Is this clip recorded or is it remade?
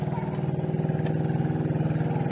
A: recorded